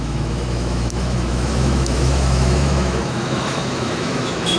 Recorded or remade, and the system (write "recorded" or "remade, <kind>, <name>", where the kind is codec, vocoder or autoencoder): remade, autoencoder, DAC-VAE